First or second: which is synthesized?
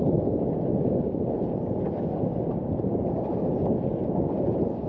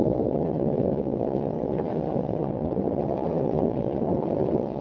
second